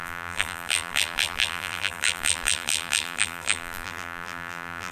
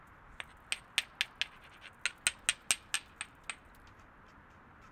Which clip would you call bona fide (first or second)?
second